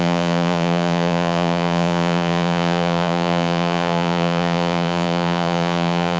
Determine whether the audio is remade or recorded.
remade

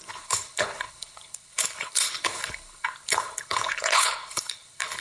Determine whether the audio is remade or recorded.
remade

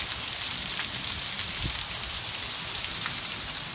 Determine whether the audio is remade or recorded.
recorded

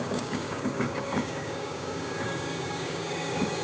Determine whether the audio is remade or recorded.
remade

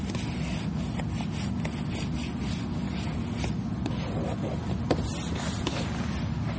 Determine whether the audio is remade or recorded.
recorded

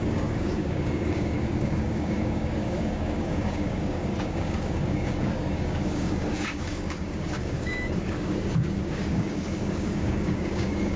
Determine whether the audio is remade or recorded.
remade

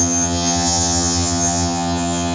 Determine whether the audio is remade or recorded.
remade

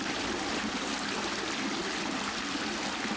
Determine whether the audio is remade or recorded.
recorded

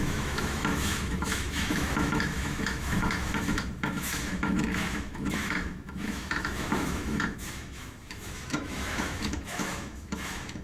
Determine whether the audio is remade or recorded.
remade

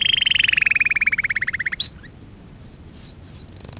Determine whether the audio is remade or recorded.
remade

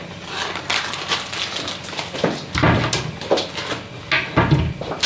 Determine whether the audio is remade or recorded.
recorded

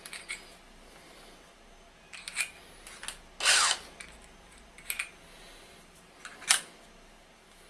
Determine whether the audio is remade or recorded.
recorded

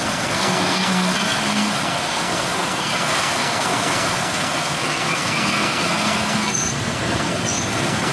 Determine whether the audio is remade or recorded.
remade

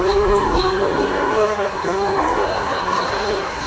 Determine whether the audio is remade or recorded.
remade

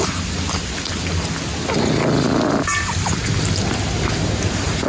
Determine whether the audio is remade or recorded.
recorded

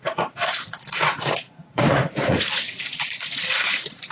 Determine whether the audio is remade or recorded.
remade